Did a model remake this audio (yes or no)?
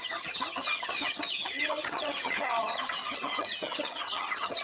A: yes